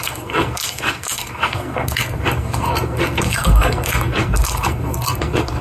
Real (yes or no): no